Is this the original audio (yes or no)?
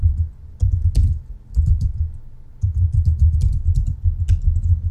yes